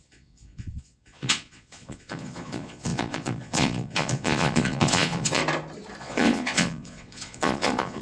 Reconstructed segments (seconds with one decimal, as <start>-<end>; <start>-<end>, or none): 0.0-5.4; 6.0-8.0